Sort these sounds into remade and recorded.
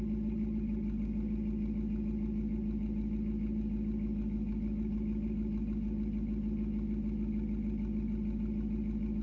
recorded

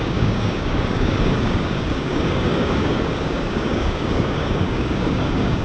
remade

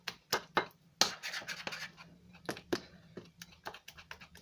recorded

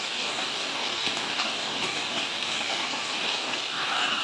remade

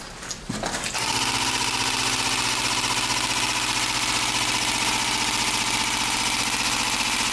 recorded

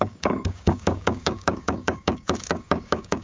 remade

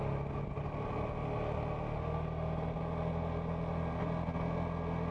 recorded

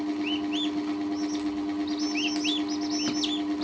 recorded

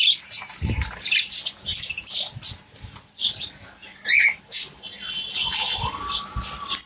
recorded